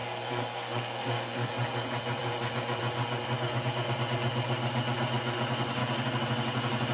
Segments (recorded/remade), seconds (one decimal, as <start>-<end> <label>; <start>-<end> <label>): 0.0-1.5 remade; 1.5-6.9 recorded